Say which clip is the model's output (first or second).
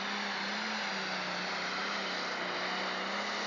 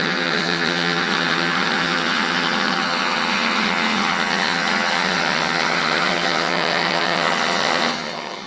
second